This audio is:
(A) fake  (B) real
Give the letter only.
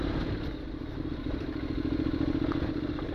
B